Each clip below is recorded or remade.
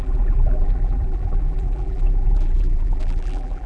remade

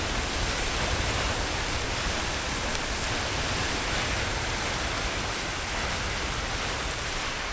recorded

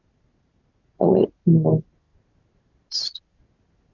recorded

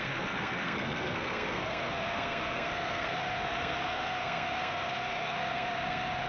remade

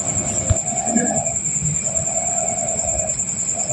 recorded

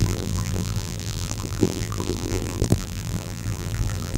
remade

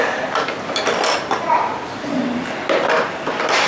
recorded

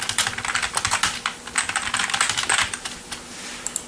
recorded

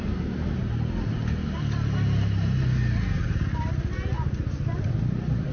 recorded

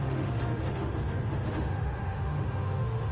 remade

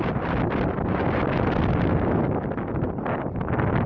recorded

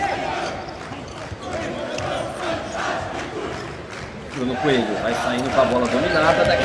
recorded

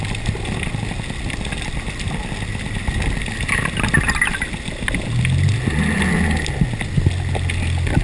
recorded